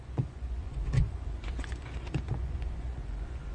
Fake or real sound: fake